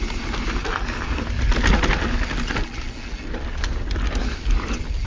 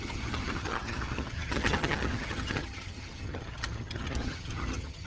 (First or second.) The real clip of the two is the first